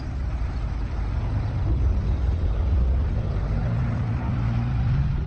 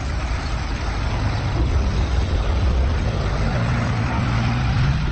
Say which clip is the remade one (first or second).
second